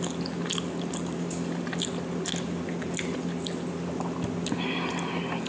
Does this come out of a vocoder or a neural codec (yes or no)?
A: no